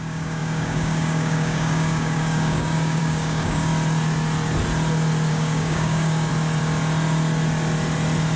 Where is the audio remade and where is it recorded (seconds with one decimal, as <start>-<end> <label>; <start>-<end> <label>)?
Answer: 0.0-3.7 remade; 3.7-5.3 recorded; 5.3-6.3 remade; 6.3-8.4 recorded